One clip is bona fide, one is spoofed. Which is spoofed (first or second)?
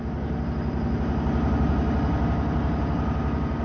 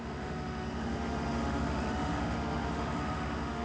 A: second